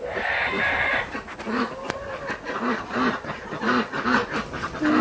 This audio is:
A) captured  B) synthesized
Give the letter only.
A